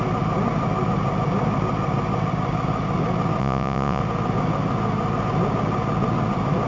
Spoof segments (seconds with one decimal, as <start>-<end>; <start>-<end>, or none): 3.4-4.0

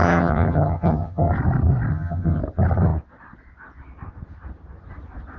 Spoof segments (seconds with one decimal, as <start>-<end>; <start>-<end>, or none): 0.0-1.3; 1.9-2.4

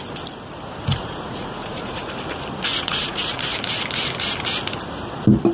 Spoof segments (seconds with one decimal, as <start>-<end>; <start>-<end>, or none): 0.9-2.1; 2.7-3.4

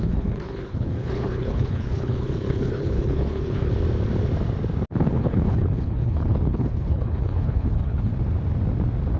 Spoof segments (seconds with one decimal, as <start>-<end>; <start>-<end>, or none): 0.0-3.7; 5.1-8.1

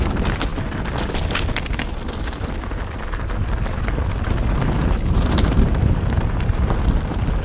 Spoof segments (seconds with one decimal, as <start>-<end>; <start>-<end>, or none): none

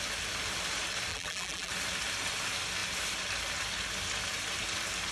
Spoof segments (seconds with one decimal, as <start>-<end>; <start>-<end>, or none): 1.1-1.7